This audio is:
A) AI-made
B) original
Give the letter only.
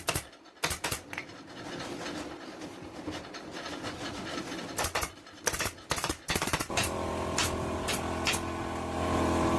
B